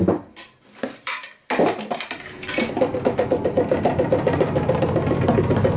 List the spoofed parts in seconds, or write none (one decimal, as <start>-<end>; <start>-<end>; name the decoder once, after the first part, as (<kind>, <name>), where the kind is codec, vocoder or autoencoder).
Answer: 0.0-1.2 (vocoder, BigVGAN v2); 4.1-5.8